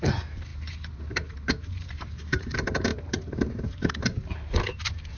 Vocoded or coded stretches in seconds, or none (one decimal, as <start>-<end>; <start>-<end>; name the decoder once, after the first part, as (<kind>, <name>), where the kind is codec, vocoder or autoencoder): 0.0-5.2 (vocoder, BigVGAN v2)